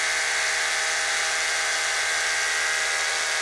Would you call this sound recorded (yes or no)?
yes